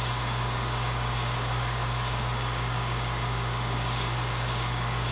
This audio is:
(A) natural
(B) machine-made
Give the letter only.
B